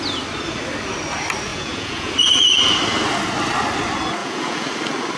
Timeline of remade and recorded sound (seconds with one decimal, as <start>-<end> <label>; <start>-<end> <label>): 0.0-1.5 recorded; 1.5-2.1 remade; 2.1-4.2 recorded; 4.2-4.7 remade; 4.7-5.2 recorded